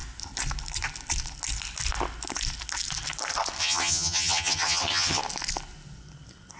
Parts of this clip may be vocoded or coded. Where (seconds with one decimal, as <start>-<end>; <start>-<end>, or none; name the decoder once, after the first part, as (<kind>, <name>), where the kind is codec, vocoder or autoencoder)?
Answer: 3.6-5.2 (vocoder, HiFi-GAN)